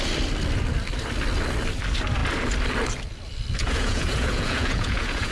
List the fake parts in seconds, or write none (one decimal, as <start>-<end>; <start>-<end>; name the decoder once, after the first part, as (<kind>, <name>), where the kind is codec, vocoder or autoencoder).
3.6-5.3 (vocoder, Vocos)